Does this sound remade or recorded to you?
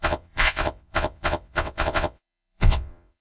remade